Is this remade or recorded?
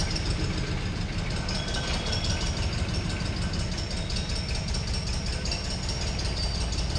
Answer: recorded